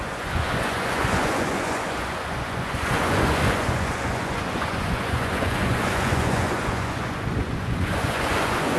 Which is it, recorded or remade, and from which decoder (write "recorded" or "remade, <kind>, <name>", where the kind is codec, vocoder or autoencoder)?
remade, vocoder, Vocos